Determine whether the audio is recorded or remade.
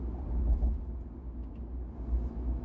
recorded